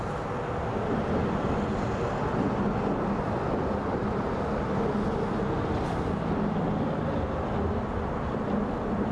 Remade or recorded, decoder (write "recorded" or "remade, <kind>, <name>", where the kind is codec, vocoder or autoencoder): recorded